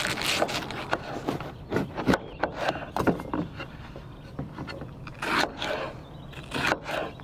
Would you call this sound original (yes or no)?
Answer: yes